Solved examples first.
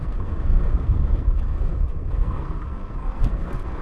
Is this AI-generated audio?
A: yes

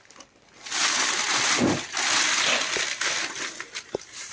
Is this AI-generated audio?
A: no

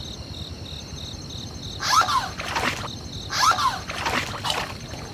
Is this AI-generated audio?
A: no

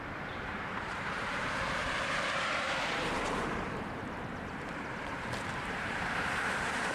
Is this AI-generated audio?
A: yes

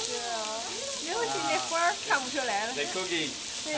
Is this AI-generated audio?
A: no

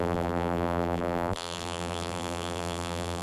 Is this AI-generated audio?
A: yes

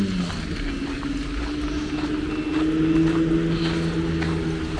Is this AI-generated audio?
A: no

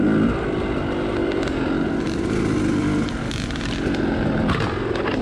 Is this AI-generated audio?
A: no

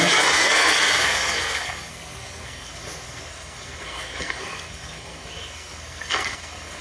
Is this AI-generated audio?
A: yes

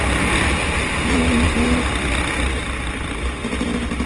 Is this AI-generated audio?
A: no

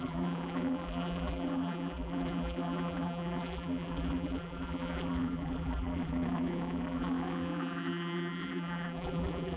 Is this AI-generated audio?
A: yes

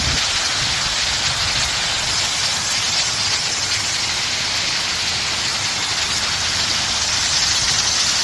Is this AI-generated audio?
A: no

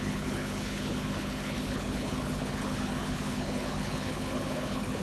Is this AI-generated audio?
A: yes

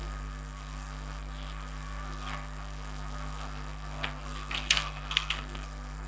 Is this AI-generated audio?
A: yes